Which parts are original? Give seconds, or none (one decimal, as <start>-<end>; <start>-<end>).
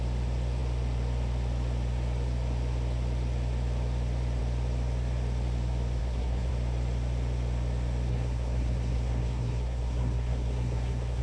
0.0-6.0; 6.5-8.1